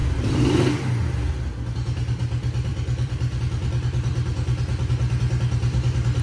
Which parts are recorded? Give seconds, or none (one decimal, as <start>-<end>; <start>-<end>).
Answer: 0.7-2.7; 3.4-6.2